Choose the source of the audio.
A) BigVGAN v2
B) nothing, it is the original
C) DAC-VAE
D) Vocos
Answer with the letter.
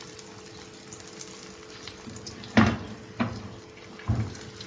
B